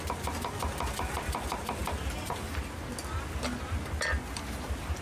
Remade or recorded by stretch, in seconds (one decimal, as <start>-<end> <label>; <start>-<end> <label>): 0.0-5.0 recorded